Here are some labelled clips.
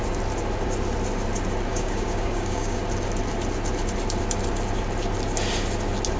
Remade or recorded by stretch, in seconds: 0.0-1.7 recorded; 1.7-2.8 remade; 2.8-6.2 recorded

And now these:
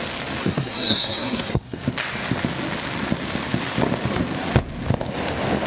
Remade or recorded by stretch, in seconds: 0.0-0.4 recorded; 0.4-1.8 remade; 1.8-5.7 recorded